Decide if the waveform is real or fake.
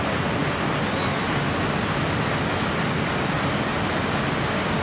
real